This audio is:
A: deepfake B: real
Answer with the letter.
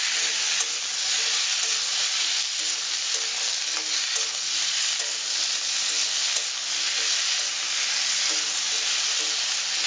B